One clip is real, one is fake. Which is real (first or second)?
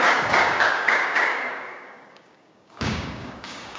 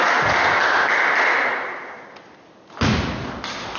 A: second